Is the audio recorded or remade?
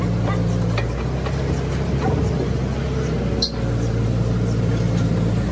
recorded